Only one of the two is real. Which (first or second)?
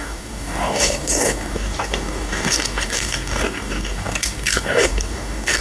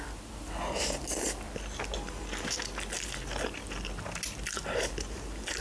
second